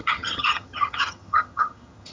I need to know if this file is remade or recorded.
remade